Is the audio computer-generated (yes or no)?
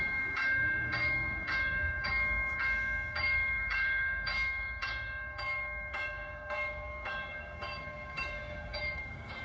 yes